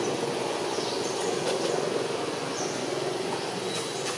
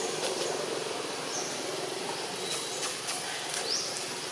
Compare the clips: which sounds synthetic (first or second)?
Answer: first